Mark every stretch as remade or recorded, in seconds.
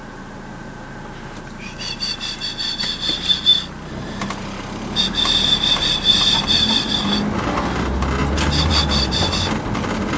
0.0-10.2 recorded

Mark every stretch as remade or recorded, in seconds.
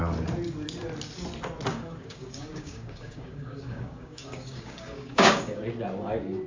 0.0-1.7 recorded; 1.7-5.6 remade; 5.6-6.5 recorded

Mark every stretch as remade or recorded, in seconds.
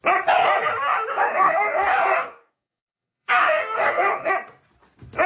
0.0-1.1 recorded; 1.1-4.3 remade; 4.3-5.3 recorded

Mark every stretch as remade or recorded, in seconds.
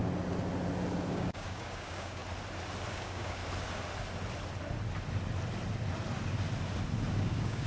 0.0-1.1 recorded; 1.1-2.2 remade; 2.2-2.9 recorded; 2.9-3.4 remade; 3.4-7.2 recorded; 7.2-7.7 remade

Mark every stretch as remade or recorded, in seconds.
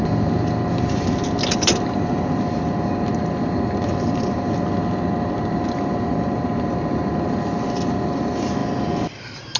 0.0-9.6 recorded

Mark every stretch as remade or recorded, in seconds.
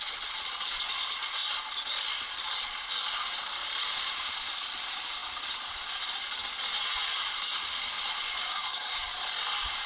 0.0-8.4 recorded; 8.4-9.1 remade; 9.1-9.9 recorded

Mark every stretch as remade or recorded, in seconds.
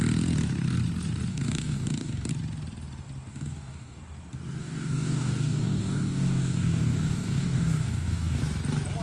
0.0-1.3 recorded; 1.3-2.3 remade; 2.3-3.3 recorded; 3.3-4.0 remade; 4.0-4.6 recorded; 4.6-8.4 remade; 8.4-9.0 recorded